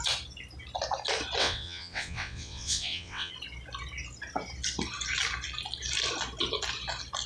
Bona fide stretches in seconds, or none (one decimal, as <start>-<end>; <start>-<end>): 0.0-1.4; 3.3-7.3